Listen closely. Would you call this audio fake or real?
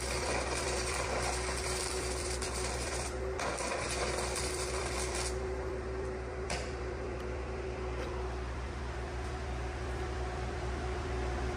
fake